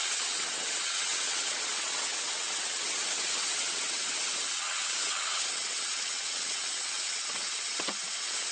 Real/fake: fake